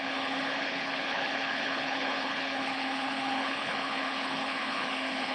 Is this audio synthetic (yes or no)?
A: yes